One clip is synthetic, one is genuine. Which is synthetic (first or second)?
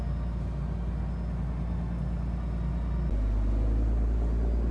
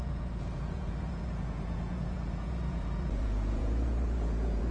second